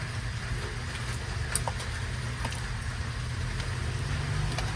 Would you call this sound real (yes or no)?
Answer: yes